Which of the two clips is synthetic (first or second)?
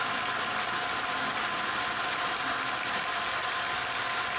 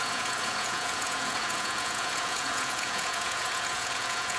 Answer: second